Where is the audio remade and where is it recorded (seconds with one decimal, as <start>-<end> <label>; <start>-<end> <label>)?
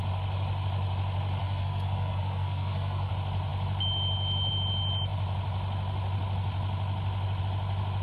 0.0-1.4 recorded; 1.4-3.1 remade; 3.1-8.0 recorded